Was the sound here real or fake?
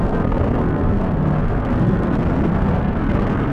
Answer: fake